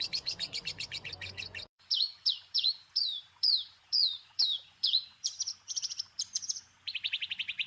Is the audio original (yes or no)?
no